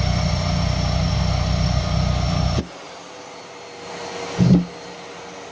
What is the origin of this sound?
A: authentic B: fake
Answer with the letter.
A